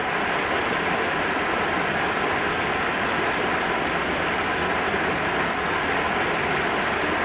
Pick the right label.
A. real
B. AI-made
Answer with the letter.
A